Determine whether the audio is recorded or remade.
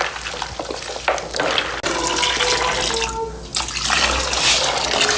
recorded